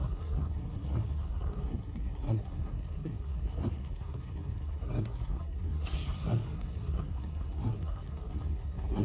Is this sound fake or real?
fake